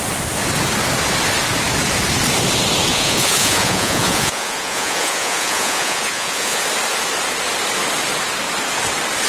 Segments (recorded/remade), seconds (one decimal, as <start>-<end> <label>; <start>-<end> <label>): 0.0-2.9 recorded; 2.9-6.6 remade; 6.6-9.3 recorded